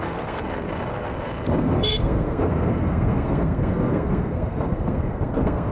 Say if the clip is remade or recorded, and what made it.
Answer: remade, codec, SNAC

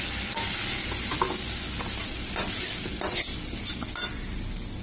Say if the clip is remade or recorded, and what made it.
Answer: recorded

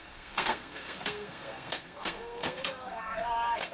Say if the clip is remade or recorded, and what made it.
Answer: remade, codec, SNAC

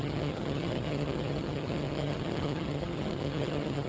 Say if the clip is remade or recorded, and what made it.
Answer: remade, vocoder, HiFi-GAN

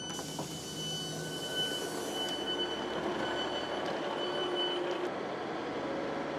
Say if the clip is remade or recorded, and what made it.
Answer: recorded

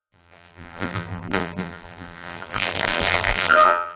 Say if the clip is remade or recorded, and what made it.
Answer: remade, vocoder, BigVGAN v2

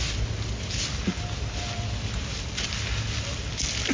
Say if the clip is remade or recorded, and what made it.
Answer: recorded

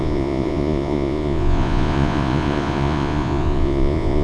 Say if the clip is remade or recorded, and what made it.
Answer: remade, vocoder, Vocos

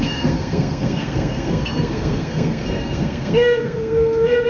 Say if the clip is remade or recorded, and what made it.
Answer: remade, codec, SNAC